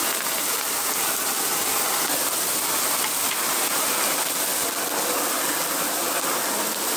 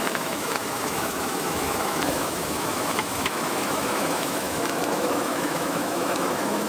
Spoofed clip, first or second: second